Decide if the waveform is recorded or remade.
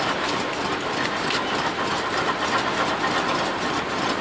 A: recorded